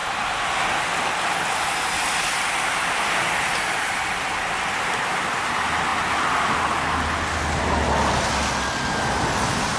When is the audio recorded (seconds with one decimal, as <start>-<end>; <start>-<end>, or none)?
0.0-9.8